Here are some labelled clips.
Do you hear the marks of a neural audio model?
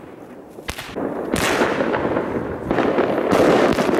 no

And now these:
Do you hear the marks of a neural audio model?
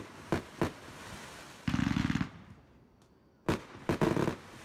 no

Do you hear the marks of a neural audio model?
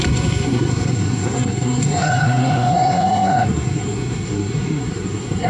yes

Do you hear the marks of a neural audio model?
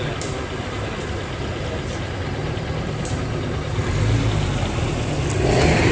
no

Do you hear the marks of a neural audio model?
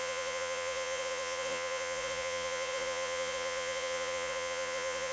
yes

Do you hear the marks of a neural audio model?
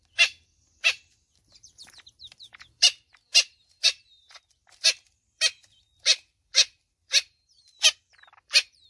yes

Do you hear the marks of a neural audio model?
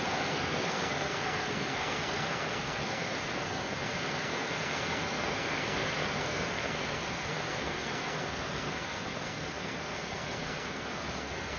yes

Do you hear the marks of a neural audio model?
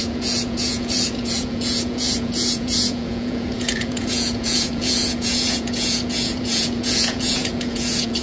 yes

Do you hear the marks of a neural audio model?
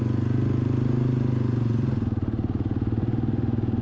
no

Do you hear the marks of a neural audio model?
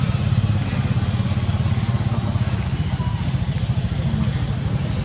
no